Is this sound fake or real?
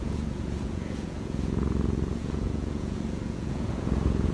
fake